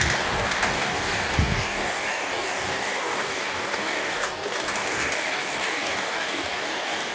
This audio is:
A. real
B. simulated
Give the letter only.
B